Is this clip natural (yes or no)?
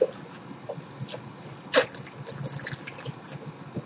yes